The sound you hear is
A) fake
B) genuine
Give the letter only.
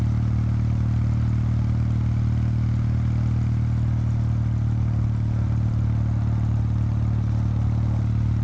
B